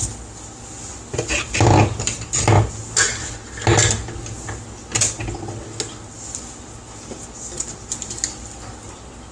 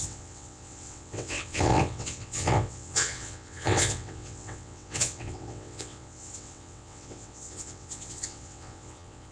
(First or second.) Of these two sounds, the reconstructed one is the second